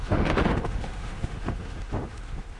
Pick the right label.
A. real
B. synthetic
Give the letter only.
B